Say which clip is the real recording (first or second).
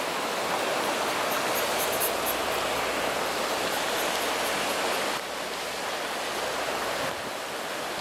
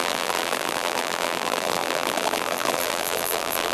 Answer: first